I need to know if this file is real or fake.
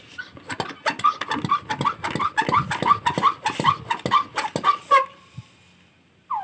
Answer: real